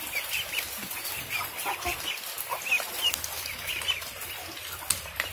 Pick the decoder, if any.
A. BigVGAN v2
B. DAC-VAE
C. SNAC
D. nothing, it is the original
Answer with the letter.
D